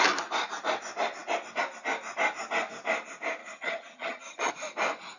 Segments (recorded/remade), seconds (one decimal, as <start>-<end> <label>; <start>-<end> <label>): 0.0-3.4 recorded; 3.4-4.5 remade; 4.5-5.2 recorded